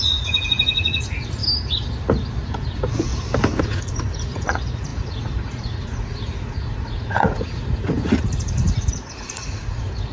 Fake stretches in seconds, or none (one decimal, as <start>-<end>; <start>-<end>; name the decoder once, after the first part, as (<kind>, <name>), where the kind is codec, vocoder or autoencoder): 0.0-1.4 (vocoder, Vocos); 2.6-3.1; 3.6-10.1